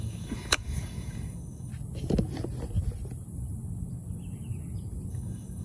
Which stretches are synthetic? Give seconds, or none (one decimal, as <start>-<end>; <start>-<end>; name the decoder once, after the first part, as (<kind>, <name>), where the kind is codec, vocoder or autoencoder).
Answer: 0.0-1.7 (codec, DAC); 5.1-5.6